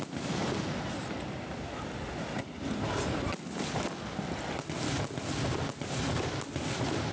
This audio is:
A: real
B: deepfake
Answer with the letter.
A